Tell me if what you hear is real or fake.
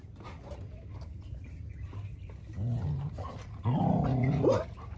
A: real